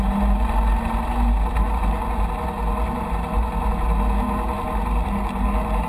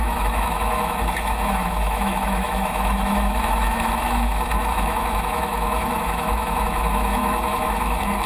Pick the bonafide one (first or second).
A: first